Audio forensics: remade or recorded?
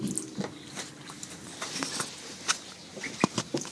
recorded